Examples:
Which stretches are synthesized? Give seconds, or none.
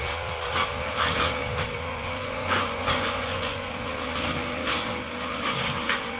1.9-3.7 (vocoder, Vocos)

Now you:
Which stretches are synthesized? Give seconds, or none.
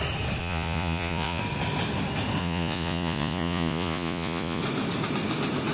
0.4-1.4 (vocoder, Vocos); 2.4-4.6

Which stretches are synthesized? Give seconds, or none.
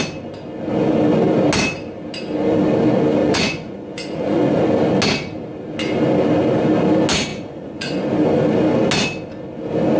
3.2-4.6 (vocoder, Vocos); 7.3-8.1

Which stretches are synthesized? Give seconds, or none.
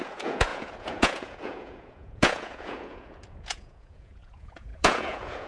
0.0-5.5 (vocoder, Vocos)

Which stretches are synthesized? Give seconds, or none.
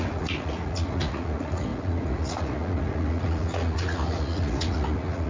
0.0-5.3 (vocoder, Vocos)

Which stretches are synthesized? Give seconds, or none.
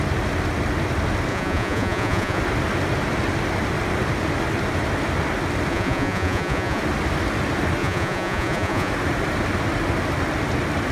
1.3-2.4 (vocoder, Vocos); 5.7-6.8; 7.8-8.9